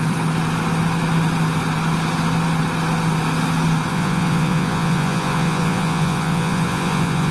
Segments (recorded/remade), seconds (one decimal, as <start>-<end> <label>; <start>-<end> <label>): 0.0-3.9 recorded; 3.9-7.3 remade